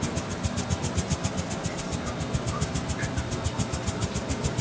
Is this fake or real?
real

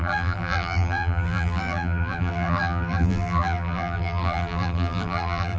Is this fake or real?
fake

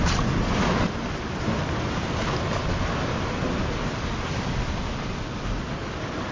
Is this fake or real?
real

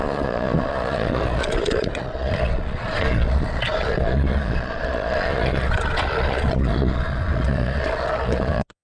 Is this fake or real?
fake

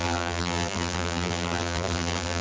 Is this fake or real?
fake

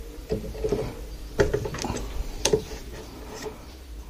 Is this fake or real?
real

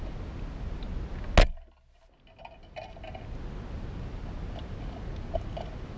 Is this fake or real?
real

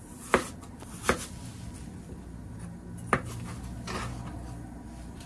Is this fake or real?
real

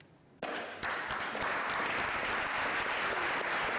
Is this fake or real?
real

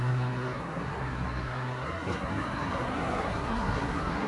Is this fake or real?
fake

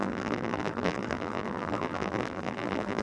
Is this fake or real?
fake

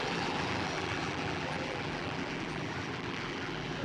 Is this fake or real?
fake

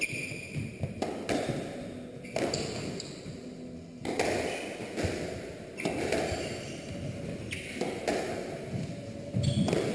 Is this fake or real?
real